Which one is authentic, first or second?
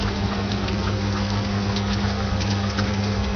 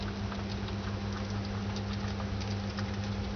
second